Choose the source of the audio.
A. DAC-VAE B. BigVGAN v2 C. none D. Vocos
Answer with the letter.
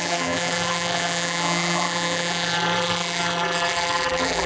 B